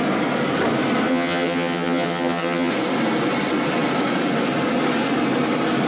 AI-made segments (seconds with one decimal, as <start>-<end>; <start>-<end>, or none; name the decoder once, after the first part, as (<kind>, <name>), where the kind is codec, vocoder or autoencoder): 1.1-2.7 (vocoder, HiFi-GAN)